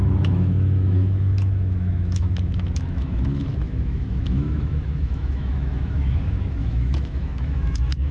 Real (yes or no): no